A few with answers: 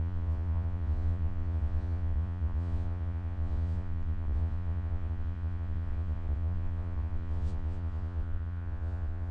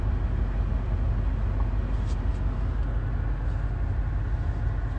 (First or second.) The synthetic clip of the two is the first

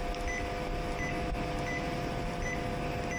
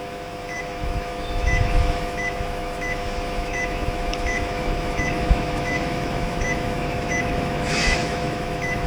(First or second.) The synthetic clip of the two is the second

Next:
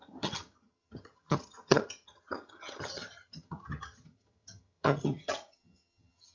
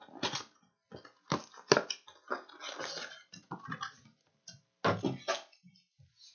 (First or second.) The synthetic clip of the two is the first